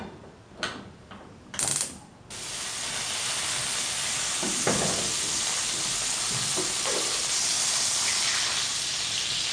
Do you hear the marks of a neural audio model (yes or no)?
no